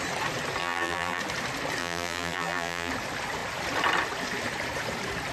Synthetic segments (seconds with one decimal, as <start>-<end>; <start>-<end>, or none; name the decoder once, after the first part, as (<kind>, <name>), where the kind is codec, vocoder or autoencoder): 0.6-1.2 (vocoder, BigVGAN v2); 1.8-2.9